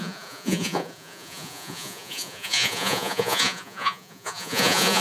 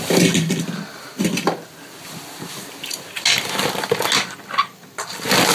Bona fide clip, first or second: second